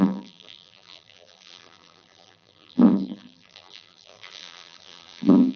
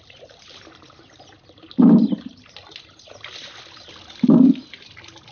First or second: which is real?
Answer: second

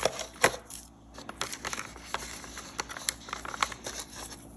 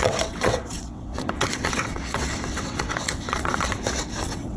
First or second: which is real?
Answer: first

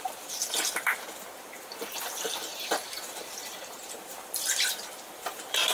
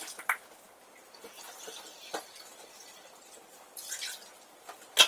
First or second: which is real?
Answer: second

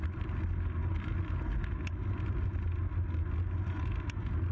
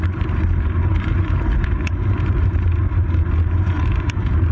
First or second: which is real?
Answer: first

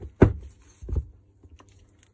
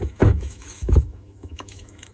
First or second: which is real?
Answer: first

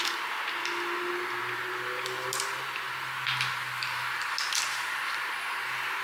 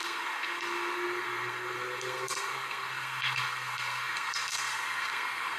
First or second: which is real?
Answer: first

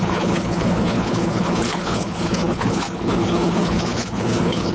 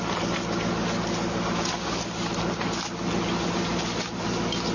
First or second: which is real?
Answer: second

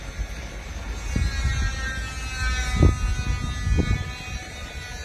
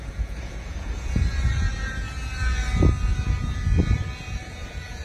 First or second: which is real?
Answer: first